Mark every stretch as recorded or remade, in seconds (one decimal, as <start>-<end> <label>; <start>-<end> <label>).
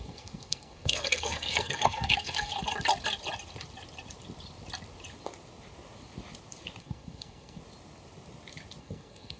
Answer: 0.0-2.5 remade; 2.5-6.8 recorded; 6.8-7.6 remade; 7.6-8.8 recorded; 8.8-9.4 remade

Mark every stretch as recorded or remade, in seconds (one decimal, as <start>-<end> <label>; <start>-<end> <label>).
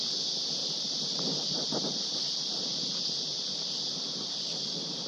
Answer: 0.0-0.6 recorded; 0.6-3.7 remade; 3.7-5.1 recorded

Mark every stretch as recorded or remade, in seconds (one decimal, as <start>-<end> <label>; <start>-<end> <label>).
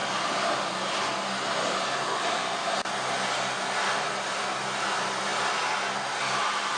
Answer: 0.0-2.2 remade; 2.2-6.8 recorded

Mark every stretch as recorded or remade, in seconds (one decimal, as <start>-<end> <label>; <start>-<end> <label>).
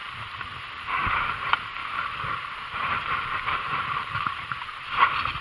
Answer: 0.0-1.8 recorded; 1.8-5.0 remade; 5.0-5.4 recorded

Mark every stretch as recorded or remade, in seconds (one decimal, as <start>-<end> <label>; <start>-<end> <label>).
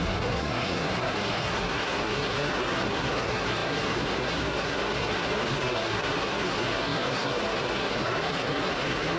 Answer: 0.0-9.2 remade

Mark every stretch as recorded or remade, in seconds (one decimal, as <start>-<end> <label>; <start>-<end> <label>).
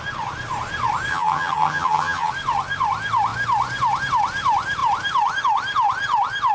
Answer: 0.0-1.1 recorded; 1.1-2.3 remade; 2.3-6.5 recorded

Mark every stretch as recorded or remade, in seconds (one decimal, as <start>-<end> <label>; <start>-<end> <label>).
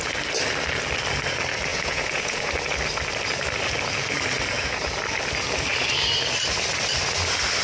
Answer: 0.0-1.7 recorded; 1.7-2.5 remade; 2.5-7.6 recorded